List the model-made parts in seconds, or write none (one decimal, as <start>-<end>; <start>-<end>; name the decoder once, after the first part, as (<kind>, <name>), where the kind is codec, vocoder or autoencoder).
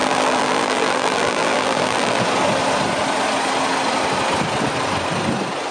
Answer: 0.0-2.2 (vocoder, BigVGAN v2)